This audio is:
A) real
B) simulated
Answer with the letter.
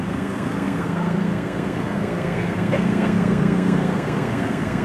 B